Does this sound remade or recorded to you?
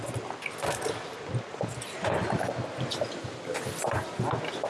recorded